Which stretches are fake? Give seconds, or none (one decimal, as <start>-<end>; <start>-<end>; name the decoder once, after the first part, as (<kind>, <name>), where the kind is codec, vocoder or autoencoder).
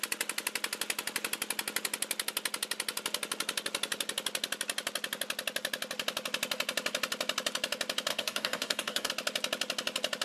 8.1-9.1 (codec, DAC)